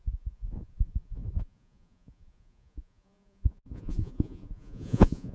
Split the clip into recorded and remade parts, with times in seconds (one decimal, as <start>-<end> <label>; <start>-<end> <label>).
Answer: 0.0-5.3 remade